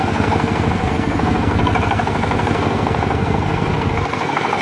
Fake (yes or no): yes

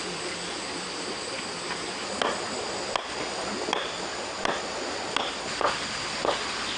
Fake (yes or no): no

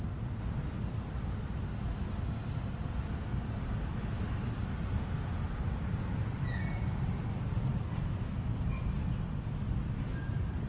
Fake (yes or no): no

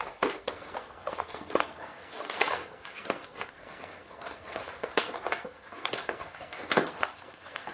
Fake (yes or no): yes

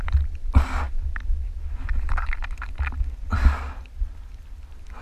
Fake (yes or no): no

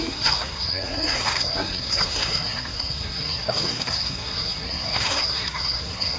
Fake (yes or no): yes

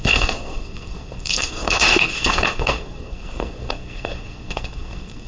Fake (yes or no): yes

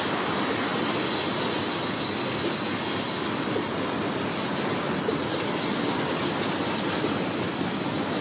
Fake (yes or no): no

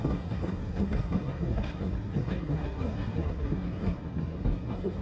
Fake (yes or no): yes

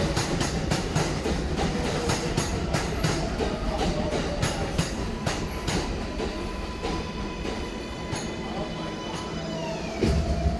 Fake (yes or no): no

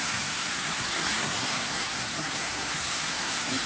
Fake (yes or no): yes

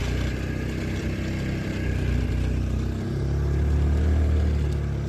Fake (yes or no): no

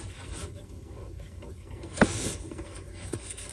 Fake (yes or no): yes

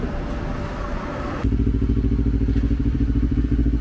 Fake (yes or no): no